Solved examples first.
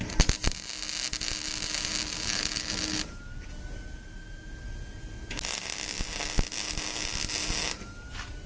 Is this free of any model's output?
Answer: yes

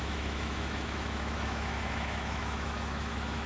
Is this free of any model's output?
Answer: no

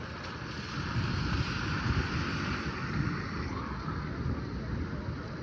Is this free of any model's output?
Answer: yes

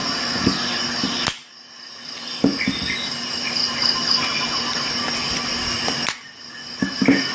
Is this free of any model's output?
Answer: yes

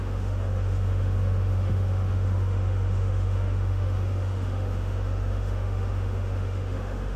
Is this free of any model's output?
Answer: no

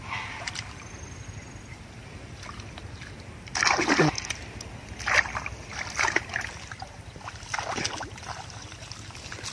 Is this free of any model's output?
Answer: yes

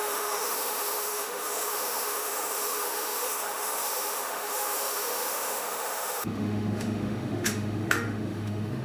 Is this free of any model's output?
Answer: no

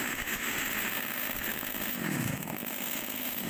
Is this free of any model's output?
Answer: no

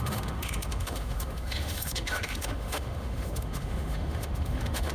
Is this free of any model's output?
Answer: no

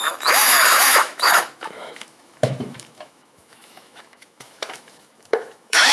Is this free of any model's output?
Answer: no